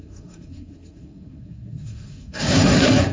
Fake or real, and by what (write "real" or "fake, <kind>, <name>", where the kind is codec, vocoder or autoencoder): fake, codec, SNAC